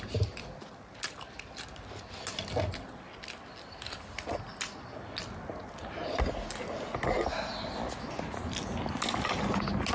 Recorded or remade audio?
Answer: recorded